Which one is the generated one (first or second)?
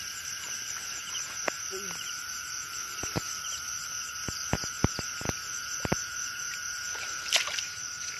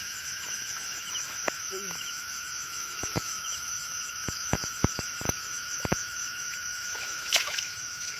second